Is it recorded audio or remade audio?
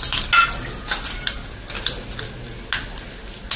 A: recorded